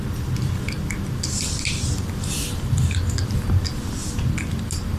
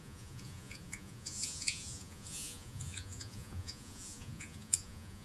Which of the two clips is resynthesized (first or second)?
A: second